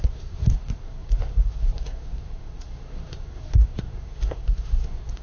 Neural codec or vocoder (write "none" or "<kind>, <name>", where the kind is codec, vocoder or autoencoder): codec, SNAC